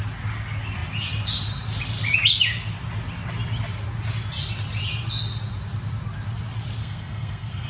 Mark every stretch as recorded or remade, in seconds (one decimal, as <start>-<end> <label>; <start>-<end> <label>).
0.0-6.8 recorded; 6.8-7.7 remade